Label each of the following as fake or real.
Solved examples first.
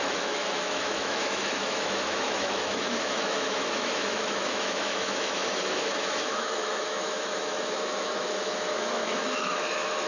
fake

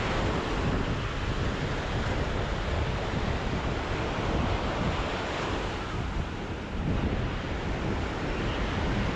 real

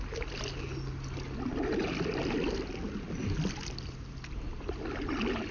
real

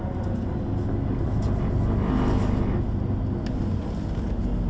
real